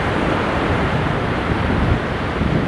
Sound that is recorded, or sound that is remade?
recorded